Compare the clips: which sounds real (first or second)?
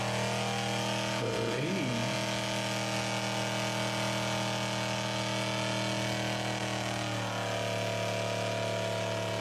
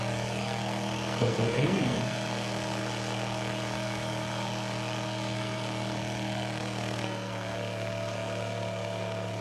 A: first